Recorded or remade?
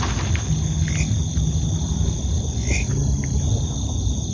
recorded